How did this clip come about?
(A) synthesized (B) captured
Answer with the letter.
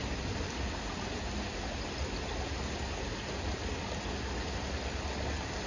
B